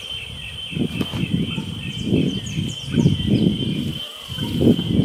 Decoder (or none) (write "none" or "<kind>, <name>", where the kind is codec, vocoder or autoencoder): none